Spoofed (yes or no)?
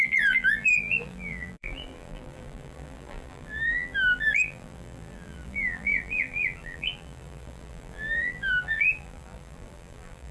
yes